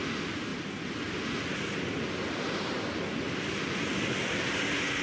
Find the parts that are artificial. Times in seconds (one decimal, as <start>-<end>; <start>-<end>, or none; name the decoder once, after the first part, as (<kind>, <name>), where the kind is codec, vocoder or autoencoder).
none